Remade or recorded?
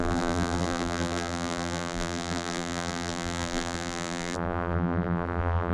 remade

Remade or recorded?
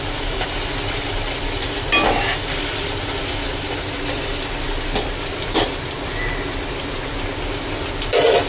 recorded